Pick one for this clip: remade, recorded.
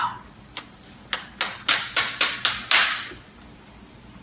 recorded